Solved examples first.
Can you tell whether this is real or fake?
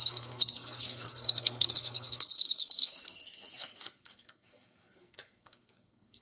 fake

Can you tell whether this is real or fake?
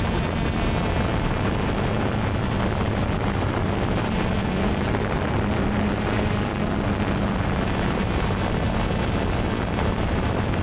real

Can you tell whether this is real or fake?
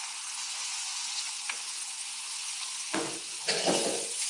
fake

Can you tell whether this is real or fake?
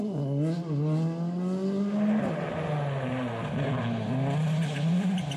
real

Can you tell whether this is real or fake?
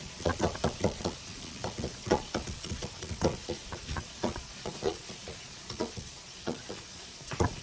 fake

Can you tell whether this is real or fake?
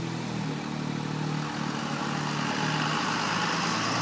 real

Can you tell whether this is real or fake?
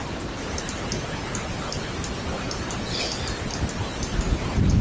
real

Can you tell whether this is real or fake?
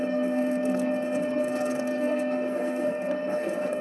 fake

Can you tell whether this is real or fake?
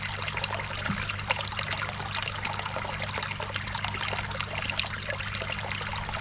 real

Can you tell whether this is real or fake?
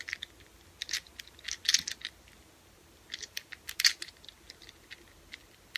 real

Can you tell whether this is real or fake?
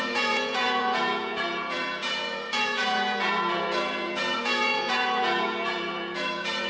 fake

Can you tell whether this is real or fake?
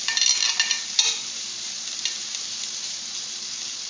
real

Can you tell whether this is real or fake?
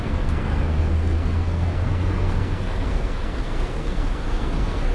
fake